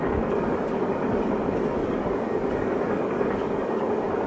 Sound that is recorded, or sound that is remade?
remade